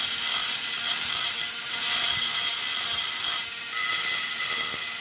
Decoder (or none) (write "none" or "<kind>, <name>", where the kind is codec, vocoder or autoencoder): none